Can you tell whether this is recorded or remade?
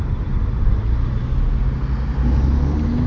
recorded